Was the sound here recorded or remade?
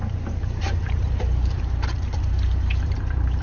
remade